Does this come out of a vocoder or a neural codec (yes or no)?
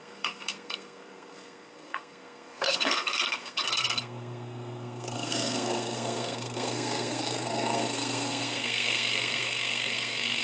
yes